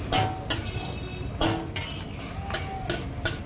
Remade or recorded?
recorded